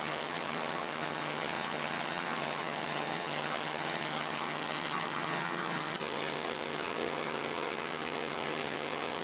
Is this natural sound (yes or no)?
no